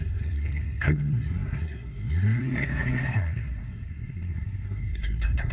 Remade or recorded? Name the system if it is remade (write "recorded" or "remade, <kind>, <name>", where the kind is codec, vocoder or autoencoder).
remade, codec, SNAC